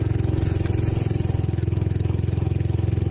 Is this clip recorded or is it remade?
recorded